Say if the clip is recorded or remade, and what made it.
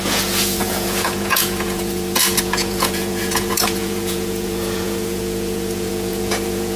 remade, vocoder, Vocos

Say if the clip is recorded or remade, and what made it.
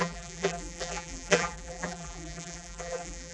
remade, vocoder, BigVGAN v2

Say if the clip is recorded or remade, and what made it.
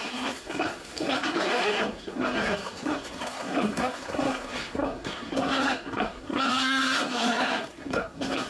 remade, codec, SNAC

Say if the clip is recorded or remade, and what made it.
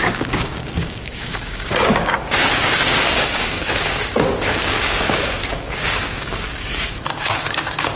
remade, codec, DAC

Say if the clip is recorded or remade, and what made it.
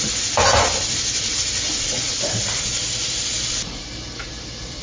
remade, vocoder, BigVGAN v2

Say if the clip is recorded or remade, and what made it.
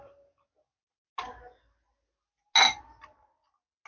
recorded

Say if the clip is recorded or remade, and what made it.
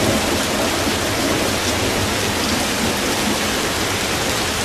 recorded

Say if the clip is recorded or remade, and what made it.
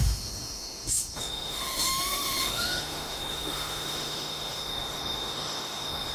remade, autoencoder, DAC-VAE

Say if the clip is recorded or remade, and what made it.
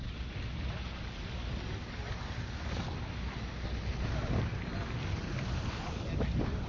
recorded